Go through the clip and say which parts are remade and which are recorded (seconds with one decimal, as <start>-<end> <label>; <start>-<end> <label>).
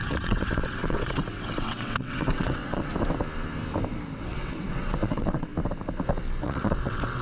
0.0-2.9 remade; 2.9-4.3 recorded; 4.3-5.5 remade; 5.5-6.4 recorded; 6.4-7.2 remade